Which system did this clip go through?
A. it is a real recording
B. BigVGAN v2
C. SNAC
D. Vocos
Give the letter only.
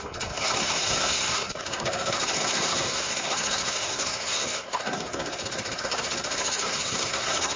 C